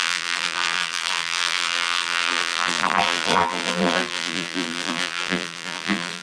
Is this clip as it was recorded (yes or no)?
no